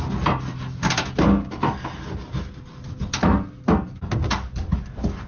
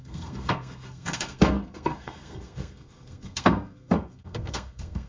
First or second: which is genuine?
first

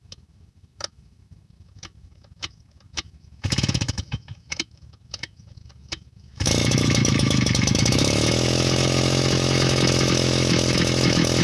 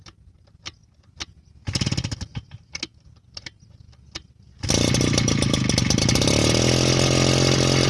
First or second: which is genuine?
second